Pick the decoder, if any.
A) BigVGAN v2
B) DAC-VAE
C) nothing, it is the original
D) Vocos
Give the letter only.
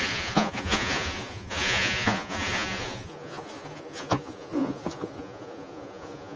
D